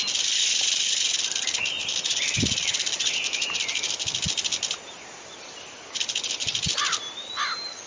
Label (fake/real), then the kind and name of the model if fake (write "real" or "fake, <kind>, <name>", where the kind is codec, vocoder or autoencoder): real